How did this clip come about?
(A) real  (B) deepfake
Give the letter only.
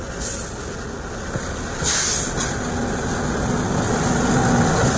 A